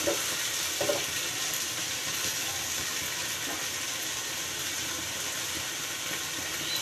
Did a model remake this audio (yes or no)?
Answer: no